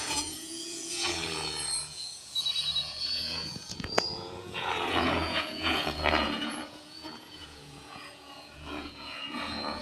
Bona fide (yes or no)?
no